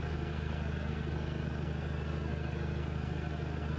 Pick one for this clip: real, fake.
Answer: fake